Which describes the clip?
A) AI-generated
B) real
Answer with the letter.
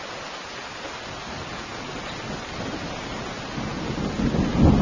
B